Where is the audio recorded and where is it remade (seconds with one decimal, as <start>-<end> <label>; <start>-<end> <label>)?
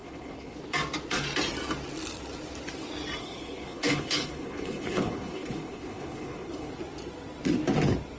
0.0-0.6 remade; 0.6-3.2 recorded; 3.2-6.7 remade; 6.7-8.2 recorded